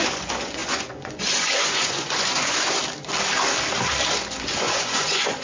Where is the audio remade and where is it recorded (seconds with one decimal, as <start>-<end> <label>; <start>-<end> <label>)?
0.0-2.8 remade; 2.8-4.1 recorded; 4.1-5.4 remade